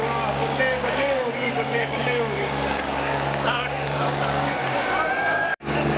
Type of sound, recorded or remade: remade